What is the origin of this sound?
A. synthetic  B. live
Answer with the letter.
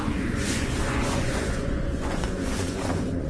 A